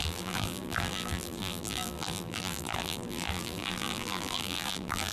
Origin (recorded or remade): remade